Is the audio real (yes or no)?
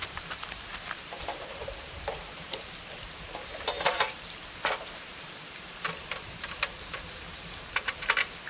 no